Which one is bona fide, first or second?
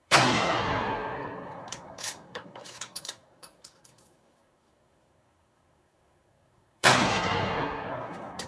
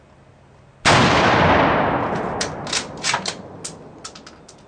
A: second